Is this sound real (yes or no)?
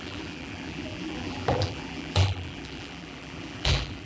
no